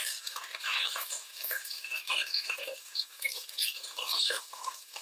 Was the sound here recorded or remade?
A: remade